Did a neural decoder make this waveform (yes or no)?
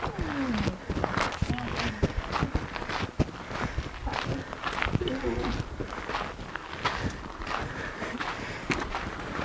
no